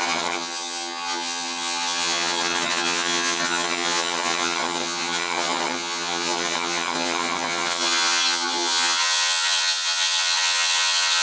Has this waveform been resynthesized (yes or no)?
yes